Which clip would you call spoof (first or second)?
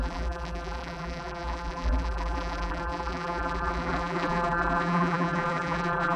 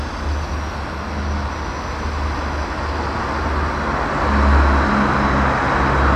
first